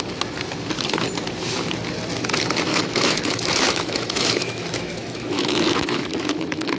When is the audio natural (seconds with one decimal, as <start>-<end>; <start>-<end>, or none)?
0.0-2.7